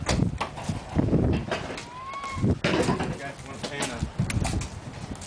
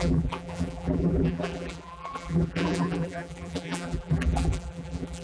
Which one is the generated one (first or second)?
second